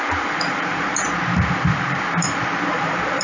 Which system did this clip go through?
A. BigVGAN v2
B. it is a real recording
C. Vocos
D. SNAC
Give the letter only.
A